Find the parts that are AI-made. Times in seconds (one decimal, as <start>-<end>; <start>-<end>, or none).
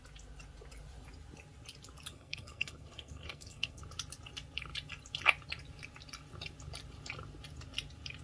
2.1-3.8